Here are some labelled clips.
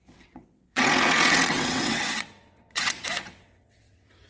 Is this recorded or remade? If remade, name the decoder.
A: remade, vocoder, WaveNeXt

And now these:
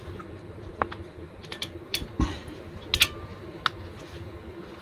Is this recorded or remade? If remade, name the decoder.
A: recorded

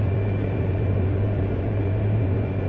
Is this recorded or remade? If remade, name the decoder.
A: remade, vocoder, Vocos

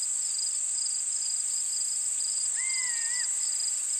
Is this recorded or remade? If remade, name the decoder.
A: recorded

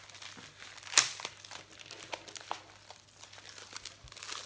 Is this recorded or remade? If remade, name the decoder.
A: recorded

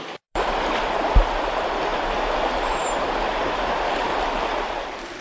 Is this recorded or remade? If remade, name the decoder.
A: remade, vocoder, BigVGAN v2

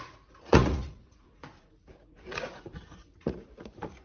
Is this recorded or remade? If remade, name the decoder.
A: remade, vocoder, Vocos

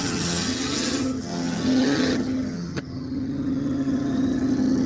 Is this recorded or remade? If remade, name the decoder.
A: remade, vocoder, HiFi-GAN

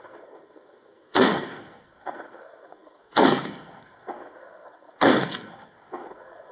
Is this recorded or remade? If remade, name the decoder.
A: remade, codec, SNAC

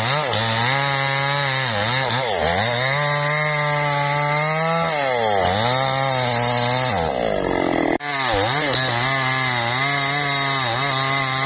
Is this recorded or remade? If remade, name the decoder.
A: recorded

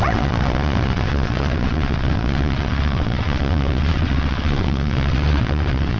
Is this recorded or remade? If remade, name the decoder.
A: remade, vocoder, WaveNeXt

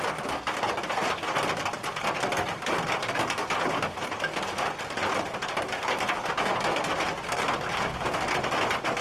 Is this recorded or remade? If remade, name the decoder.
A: recorded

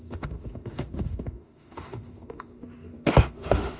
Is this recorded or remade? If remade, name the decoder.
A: remade, autoencoder, DAC-VAE